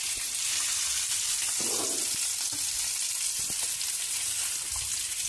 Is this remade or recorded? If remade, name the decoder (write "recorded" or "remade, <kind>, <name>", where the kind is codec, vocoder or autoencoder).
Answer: recorded